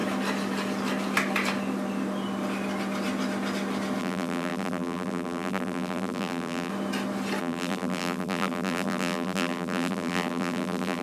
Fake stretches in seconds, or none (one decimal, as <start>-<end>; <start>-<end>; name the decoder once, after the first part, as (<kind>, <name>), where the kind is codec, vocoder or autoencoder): 4.0-6.7 (vocoder, BigVGAN v2); 7.4-11.0